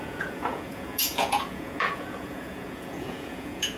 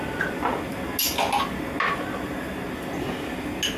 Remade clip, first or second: first